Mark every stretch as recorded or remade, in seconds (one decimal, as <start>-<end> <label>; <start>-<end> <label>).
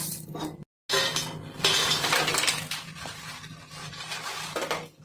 0.0-1.8 recorded; 1.8-3.3 remade; 3.3-3.8 recorded; 3.8-5.0 remade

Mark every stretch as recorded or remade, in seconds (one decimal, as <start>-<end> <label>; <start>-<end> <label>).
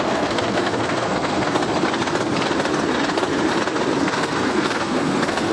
0.0-1.6 remade; 1.6-4.0 recorded; 4.0-5.5 remade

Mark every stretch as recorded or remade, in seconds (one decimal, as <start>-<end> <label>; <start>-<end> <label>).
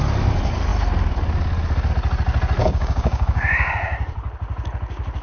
0.0-2.6 recorded; 2.6-3.7 remade; 3.7-5.2 recorded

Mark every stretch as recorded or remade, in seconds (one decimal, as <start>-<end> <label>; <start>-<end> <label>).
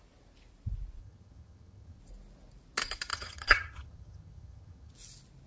0.0-1.0 recorded; 1.0-2.0 remade; 2.0-3.1 recorded; 3.1-4.9 remade; 4.9-5.5 recorded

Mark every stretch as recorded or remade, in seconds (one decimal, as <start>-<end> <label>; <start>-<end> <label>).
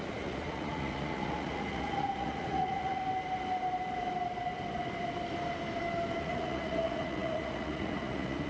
0.0-3.0 remade; 3.0-6.2 recorded; 6.2-8.5 remade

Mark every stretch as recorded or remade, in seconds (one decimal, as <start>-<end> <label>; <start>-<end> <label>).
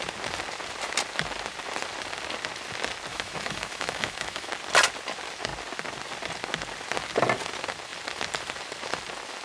0.0-3.1 recorded; 3.1-4.5 remade; 4.5-9.4 recorded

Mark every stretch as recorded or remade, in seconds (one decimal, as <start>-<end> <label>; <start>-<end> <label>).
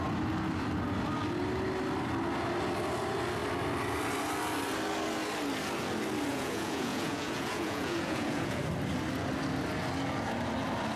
0.0-6.3 recorded; 6.3-8.6 remade; 8.6-11.0 recorded